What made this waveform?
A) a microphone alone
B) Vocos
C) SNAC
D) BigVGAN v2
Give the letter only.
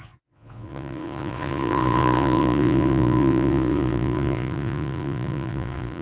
B